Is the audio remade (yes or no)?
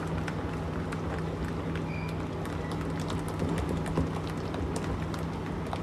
no